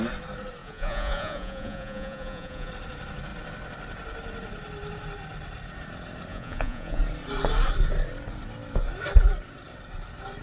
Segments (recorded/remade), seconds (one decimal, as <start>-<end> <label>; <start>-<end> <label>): 0.0-0.6 recorded; 0.6-2.7 remade; 2.7-6.3 recorded; 6.3-7.0 remade; 7.0-10.4 recorded